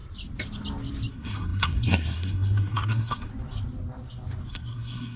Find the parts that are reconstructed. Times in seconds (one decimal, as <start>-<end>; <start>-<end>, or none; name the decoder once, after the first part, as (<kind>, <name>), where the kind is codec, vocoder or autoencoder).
1.1-3.3 (codec, SNAC); 4.5-5.2